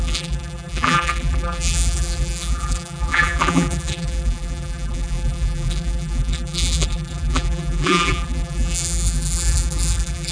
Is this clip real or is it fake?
fake